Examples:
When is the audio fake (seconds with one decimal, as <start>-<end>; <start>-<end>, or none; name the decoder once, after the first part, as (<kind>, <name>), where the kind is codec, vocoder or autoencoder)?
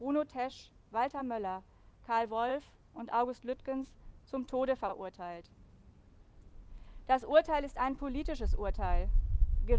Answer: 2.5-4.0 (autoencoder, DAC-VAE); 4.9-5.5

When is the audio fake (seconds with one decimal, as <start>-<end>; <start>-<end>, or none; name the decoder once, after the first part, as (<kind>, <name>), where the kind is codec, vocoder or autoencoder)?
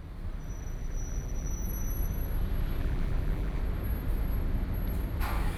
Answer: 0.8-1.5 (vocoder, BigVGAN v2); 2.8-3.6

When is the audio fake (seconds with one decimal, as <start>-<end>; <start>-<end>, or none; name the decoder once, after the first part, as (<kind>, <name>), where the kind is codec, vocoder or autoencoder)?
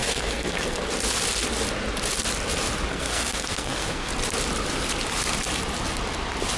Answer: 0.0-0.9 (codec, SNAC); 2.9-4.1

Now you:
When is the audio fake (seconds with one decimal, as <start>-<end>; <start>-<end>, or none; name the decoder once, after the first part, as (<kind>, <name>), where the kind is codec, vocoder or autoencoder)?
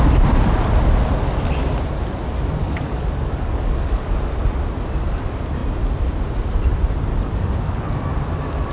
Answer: 2.6-4.1 (codec, DAC); 7.1-7.9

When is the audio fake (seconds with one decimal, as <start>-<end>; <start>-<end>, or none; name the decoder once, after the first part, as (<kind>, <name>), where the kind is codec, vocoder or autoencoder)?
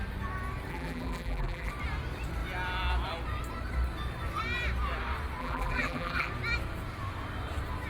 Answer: 0.7-1.7 (vocoder, BigVGAN v2); 5.4-6.3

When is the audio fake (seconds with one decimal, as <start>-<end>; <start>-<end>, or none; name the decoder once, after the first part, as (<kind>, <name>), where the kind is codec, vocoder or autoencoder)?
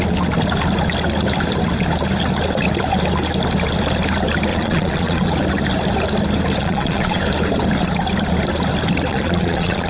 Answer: 4.5-5.3 (vocoder, Vocos); 6.6-7.2; 9.1-9.9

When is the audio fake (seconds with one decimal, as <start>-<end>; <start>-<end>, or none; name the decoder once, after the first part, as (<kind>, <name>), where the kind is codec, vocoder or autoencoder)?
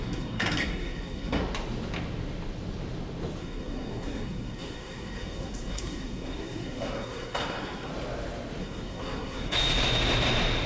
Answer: 0.0-1.4 (codec, SNAC); 3.4-7.9; 8.6-9.6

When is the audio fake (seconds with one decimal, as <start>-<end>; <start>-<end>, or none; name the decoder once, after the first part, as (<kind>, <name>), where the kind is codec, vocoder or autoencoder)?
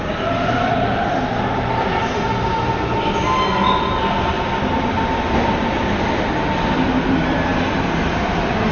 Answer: none